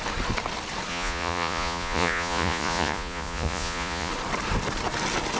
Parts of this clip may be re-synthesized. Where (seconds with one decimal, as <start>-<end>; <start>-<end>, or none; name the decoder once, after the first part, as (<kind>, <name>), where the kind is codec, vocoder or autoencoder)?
0.9-4.1 (vocoder, Vocos)